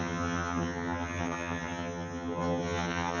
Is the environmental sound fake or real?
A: fake